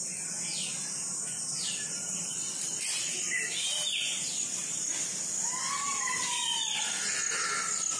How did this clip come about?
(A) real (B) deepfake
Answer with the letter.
A